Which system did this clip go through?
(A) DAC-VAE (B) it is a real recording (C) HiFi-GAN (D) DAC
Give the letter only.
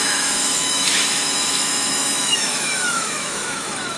A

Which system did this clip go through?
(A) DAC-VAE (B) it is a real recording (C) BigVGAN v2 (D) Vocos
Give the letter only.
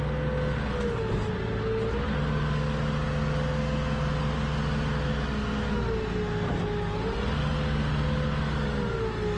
B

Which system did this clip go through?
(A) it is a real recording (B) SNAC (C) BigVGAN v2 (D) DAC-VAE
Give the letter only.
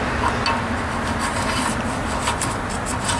A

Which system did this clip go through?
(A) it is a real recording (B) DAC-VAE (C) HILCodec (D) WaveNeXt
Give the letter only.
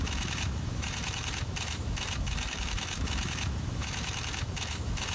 B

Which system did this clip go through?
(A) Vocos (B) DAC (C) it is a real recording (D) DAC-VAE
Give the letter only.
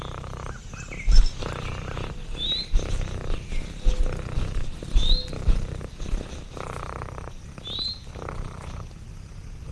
C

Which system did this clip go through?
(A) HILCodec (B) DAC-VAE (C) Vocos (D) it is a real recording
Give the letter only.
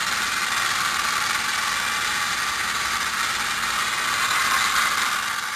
D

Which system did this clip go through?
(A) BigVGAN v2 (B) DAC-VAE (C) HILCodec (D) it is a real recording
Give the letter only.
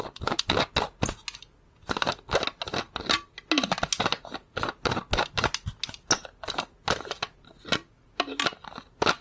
D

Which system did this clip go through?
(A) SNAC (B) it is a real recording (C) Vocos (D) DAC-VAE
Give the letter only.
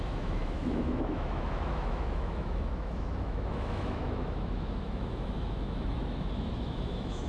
D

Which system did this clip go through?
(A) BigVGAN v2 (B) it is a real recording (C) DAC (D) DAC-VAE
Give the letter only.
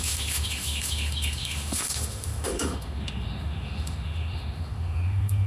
D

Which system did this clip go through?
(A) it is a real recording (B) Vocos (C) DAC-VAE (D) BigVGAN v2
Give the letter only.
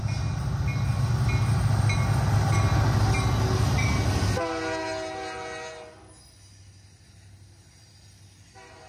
A